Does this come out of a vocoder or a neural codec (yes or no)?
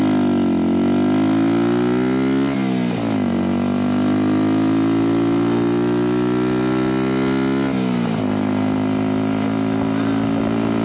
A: no